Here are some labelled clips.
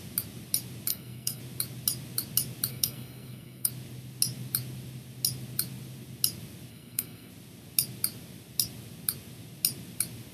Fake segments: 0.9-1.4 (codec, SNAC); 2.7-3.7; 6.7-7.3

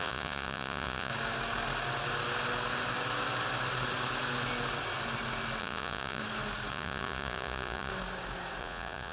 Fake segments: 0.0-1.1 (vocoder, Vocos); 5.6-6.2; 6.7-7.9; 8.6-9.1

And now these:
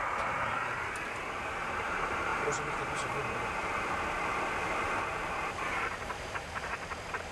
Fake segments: 0.0-7.3 (vocoder, BigVGAN v2)